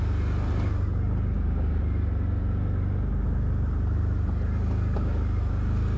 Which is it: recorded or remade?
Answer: recorded